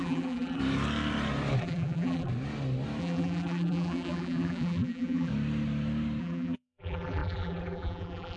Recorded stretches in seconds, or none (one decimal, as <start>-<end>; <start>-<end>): 0.6-1.6; 2.3-3.0; 5.3-6.2

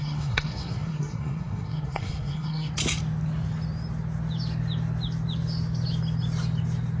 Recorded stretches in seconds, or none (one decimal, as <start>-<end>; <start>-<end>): 2.7-7.0

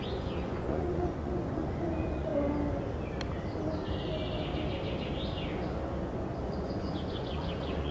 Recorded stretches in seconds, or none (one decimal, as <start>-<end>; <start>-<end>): 2.3-6.0

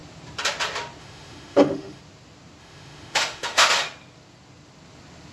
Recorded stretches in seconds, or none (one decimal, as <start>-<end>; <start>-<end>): 0.0-1.0; 2.0-2.6; 3.7-5.3

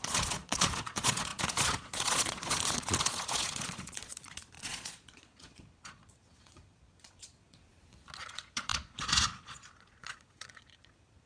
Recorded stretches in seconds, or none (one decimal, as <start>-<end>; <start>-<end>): 7.7-8.2

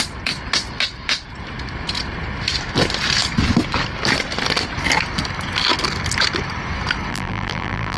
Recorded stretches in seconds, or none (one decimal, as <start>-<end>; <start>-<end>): 0.0-7.1

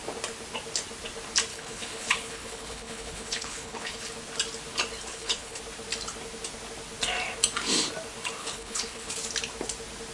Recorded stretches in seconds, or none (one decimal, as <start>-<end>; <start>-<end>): 0.0-1.5; 4.1-5.1; 5.6-8.4; 9.1-10.1